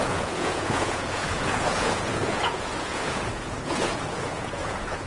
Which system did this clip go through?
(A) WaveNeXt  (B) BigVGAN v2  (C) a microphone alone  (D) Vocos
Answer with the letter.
D